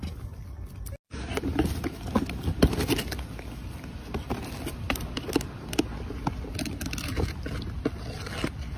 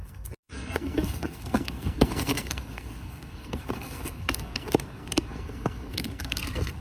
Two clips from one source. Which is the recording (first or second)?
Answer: first